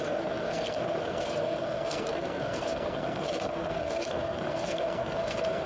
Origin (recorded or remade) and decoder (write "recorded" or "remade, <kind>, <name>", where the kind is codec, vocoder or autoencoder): remade, codec, SNAC